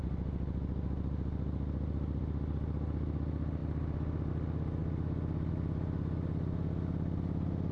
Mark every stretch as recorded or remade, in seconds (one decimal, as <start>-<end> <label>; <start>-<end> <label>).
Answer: 0.0-7.7 recorded